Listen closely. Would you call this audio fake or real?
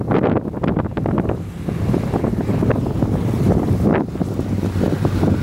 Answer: real